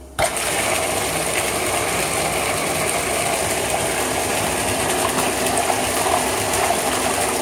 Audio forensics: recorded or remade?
recorded